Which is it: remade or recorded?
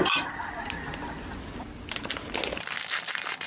recorded